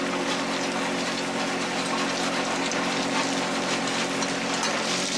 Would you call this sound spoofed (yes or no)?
no